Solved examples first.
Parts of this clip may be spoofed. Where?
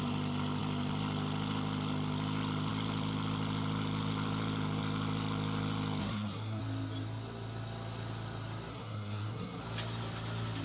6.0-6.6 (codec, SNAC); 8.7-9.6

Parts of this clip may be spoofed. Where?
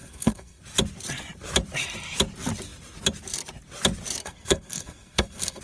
0.0-0.6 (codec, SNAC); 4.2-5.6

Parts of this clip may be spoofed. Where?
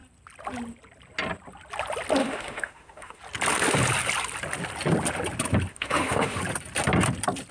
2.2-3.2 (autoencoder, DAC-VAE); 5.7-6.4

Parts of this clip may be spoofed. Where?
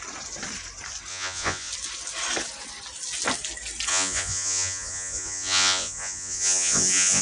1.1-1.7 (vocoder, Vocos); 3.9-7.2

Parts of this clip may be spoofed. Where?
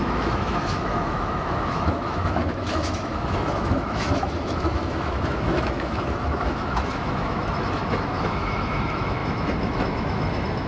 0.0-10.7 (autoencoder, DAC-VAE)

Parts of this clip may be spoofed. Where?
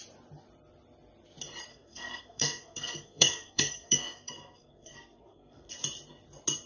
1.7-5.7 (codec, SNAC)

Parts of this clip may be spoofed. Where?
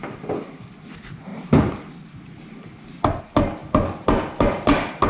none